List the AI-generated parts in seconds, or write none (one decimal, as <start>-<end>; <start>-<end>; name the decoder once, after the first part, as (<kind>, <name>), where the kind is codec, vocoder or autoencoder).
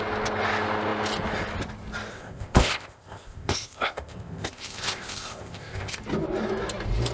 2.1-6.0 (codec, ZipCodec)